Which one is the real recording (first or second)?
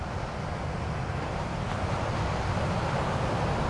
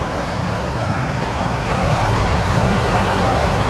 first